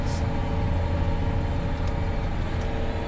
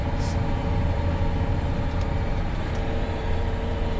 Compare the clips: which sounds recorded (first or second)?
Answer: first